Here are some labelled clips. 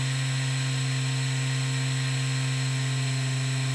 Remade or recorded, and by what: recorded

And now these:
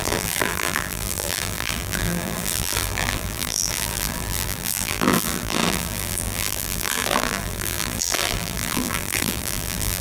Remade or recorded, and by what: remade, vocoder, BigVGAN v2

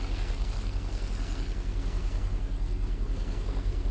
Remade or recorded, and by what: remade, codec, SNAC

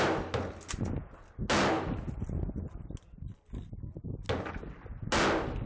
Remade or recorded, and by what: recorded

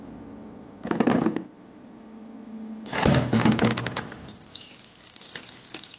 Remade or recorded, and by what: recorded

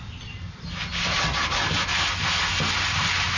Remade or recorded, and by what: recorded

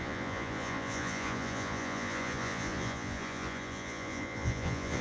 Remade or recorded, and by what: remade, vocoder, Vocos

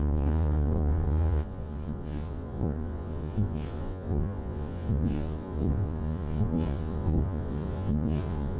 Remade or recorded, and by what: remade, vocoder, Vocos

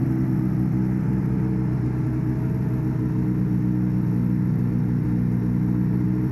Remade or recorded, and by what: recorded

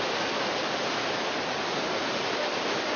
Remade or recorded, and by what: recorded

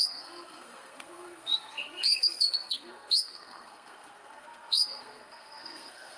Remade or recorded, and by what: remade, codec, SNAC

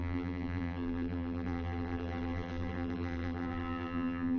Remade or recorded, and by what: remade, vocoder, BigVGAN v2